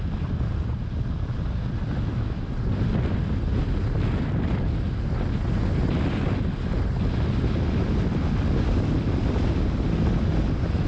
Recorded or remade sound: recorded